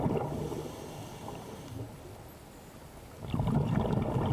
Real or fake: real